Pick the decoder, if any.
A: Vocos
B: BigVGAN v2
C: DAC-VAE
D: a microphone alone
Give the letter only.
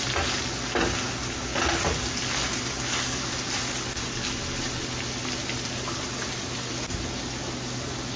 D